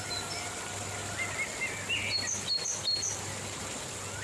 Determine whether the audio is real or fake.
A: real